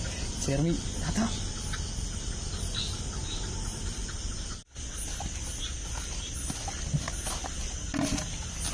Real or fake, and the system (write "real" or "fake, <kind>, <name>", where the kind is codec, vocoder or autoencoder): real